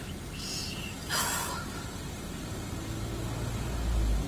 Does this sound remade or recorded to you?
recorded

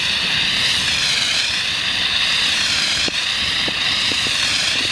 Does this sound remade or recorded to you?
remade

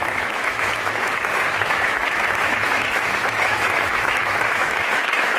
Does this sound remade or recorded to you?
remade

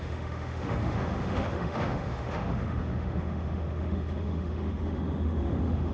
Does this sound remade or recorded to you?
remade